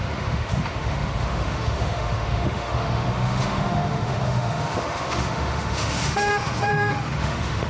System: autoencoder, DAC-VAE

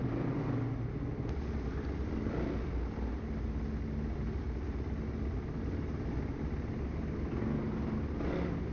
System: none